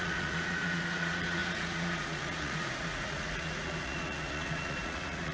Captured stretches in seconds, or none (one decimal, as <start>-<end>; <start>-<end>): none